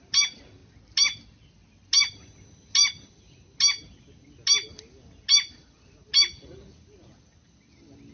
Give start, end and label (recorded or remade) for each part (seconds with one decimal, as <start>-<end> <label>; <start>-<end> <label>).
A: 0.0-8.1 recorded